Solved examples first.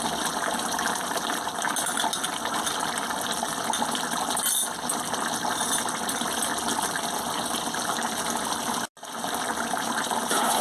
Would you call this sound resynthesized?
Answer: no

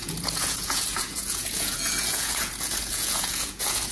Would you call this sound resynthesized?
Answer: yes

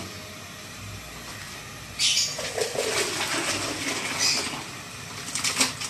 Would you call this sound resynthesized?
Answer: no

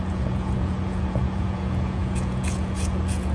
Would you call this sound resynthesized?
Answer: yes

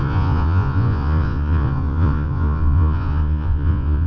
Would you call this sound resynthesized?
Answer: yes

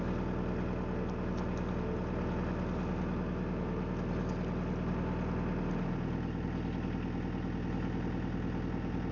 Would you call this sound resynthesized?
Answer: no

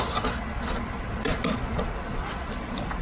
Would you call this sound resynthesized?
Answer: yes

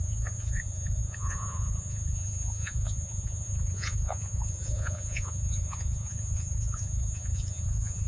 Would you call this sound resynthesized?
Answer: yes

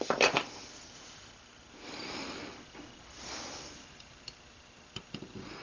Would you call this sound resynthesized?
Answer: no